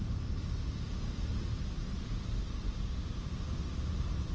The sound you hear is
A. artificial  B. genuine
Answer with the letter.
B